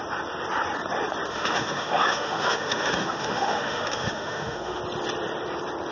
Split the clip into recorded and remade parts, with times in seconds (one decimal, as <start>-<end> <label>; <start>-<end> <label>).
0.0-1.3 recorded; 1.3-4.8 remade; 4.8-5.9 recorded